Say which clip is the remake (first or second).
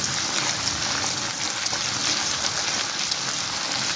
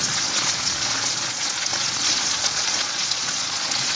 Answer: second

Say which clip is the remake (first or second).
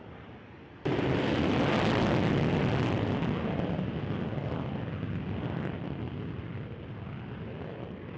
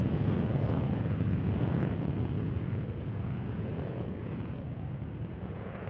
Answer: second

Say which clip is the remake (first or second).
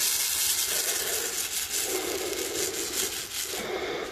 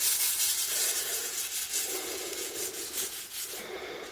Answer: second